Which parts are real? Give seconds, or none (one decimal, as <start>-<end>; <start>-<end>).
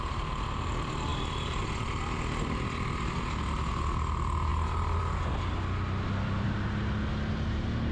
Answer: 0.0-1.1; 1.6-4.5; 5.0-7.9